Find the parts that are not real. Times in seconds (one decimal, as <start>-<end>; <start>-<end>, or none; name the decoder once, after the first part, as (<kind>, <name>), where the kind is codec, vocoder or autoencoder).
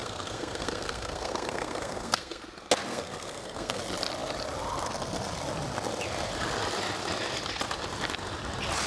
0.0-2.4 (codec, SNAC); 2.9-3.8